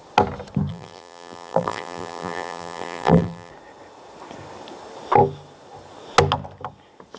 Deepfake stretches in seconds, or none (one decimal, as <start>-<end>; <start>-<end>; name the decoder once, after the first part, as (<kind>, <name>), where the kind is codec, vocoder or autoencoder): 0.7-3.5 (vocoder, BigVGAN v2)